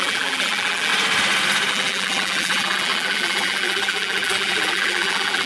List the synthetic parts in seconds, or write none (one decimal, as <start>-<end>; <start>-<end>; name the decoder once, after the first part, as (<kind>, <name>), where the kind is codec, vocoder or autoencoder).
0.0-0.9 (vocoder, BigVGAN v2); 1.7-5.5